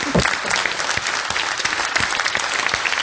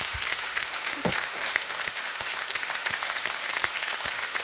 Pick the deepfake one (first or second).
second